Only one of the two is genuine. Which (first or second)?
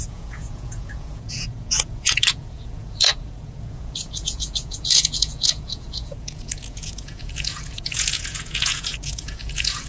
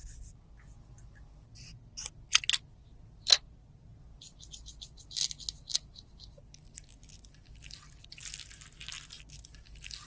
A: second